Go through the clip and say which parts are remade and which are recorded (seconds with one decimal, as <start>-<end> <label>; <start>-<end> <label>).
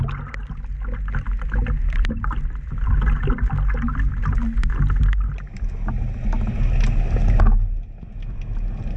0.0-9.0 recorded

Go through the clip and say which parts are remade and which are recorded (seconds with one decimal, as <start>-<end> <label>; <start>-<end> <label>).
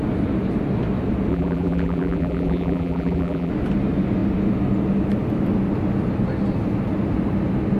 0.0-1.3 recorded; 1.3-3.5 remade; 3.5-7.8 recorded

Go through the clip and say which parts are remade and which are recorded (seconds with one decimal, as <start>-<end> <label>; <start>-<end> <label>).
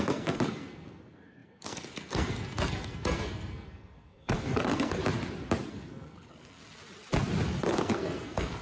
0.0-5.0 remade; 5.0-5.7 recorded; 5.7-6.6 remade; 6.6-7.6 recorded; 7.6-8.6 remade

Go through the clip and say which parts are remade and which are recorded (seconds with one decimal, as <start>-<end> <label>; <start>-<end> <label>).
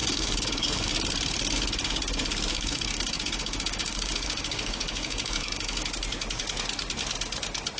0.0-0.9 remade; 0.9-2.5 recorded; 2.5-5.9 remade; 5.9-7.8 recorded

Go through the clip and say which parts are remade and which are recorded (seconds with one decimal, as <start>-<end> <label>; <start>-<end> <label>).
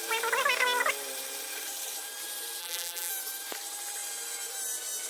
0.0-2.6 recorded; 2.6-3.1 remade; 3.1-5.1 recorded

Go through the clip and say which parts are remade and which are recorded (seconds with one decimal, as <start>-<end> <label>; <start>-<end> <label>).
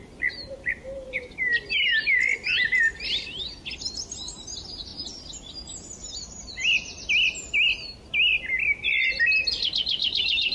0.0-10.5 recorded